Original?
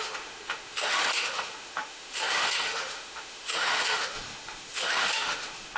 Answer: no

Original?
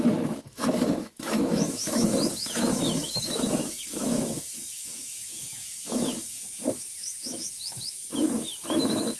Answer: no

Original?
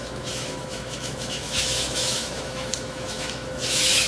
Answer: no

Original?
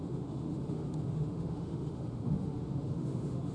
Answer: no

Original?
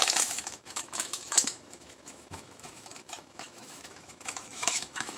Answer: no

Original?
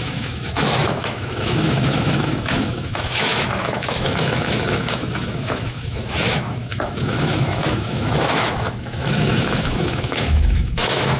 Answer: no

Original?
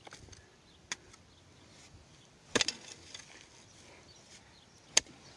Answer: yes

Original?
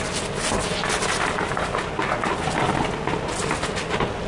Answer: yes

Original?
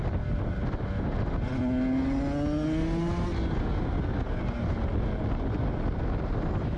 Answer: yes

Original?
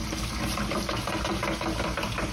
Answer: yes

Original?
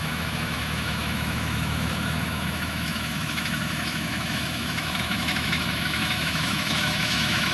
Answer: no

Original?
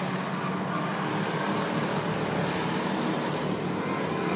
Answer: yes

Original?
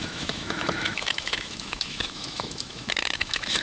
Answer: no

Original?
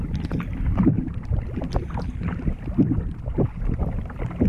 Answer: yes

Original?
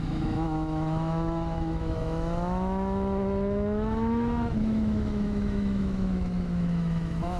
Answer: no